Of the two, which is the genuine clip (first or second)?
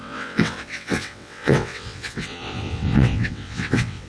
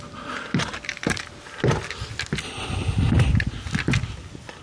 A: second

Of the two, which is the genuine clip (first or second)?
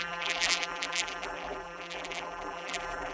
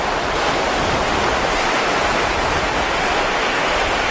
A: second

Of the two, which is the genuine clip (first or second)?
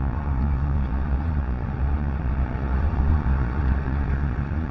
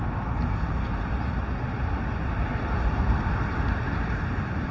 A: second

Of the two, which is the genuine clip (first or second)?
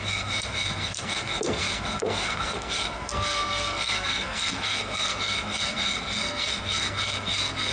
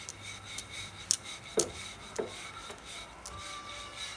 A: second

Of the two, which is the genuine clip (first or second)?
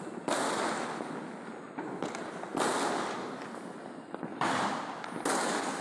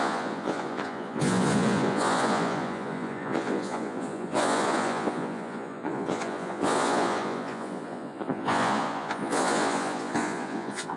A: first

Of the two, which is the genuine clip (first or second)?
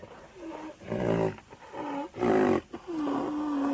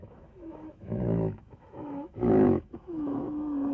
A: first